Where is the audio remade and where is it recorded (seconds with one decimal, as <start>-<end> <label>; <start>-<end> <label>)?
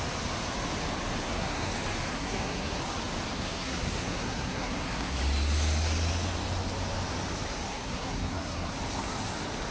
0.0-1.2 recorded; 1.2-1.7 remade; 1.7-2.1 recorded; 2.1-2.8 remade; 2.8-3.3 recorded; 3.3-5.2 remade; 5.2-7.7 recorded; 7.7-8.7 remade; 8.7-9.7 recorded